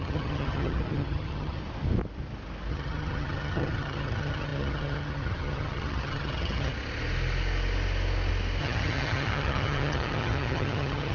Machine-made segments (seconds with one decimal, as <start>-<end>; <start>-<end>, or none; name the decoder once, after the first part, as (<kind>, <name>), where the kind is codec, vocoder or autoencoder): 0.0-1.6 (vocoder, HiFi-GAN); 2.7-6.7; 8.6-11.1